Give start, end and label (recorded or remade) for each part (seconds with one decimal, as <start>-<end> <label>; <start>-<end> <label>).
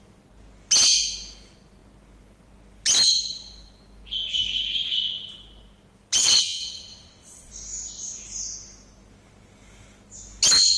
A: 0.0-6.2 recorded; 6.2-7.5 remade; 7.5-10.8 recorded